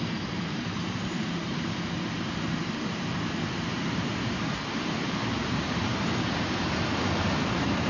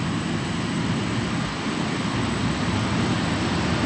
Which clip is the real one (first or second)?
second